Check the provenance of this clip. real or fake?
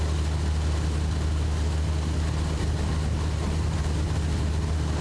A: real